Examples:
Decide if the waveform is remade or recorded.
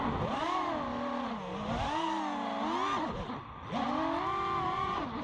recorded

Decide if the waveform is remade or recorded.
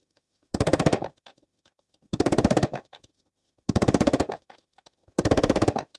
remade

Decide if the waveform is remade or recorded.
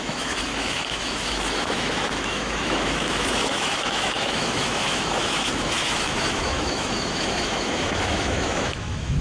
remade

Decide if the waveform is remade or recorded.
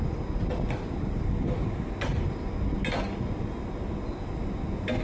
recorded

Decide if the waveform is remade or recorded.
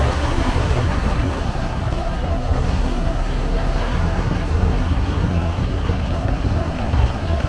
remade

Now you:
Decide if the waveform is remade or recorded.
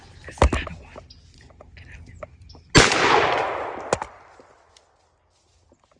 recorded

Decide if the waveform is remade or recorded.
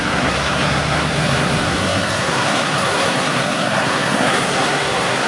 remade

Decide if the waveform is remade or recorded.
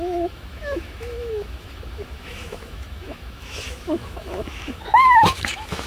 remade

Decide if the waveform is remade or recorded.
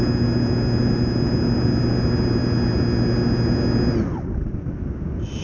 recorded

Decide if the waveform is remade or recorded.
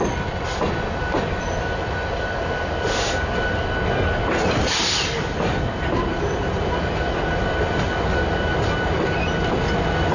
recorded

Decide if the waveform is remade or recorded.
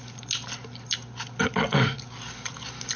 recorded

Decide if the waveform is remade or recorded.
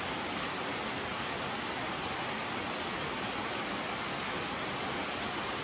recorded